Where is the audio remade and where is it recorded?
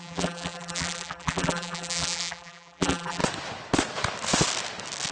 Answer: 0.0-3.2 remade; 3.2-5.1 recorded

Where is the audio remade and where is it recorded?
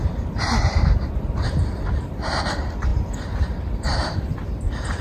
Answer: 0.0-5.0 remade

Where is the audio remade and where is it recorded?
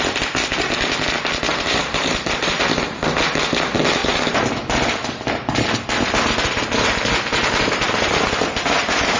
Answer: 0.0-1.5 recorded; 1.5-2.6 remade; 2.6-4.0 recorded; 4.0-9.2 remade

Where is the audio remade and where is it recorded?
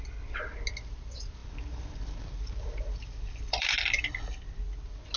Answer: 0.0-1.4 recorded; 1.4-4.5 remade; 4.5-5.2 recorded